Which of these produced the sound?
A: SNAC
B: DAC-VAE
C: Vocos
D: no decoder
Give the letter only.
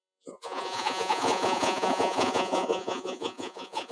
C